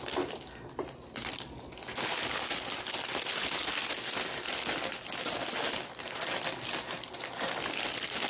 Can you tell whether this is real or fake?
real